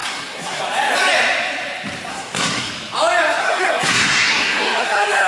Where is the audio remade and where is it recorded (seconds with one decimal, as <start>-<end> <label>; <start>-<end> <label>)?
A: 0.0-0.6 remade; 0.6-2.1 recorded; 2.1-2.7 remade; 2.7-3.4 recorded; 3.4-5.3 remade